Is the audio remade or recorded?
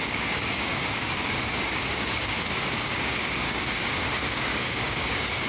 remade